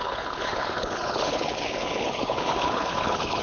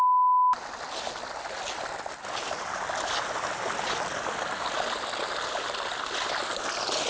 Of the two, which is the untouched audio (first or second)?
second